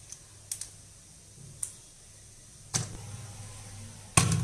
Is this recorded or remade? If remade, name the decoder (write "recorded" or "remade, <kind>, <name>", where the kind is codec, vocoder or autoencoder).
recorded